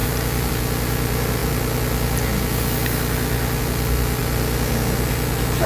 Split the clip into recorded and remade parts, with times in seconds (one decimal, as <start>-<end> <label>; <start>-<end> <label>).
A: 0.0-5.7 recorded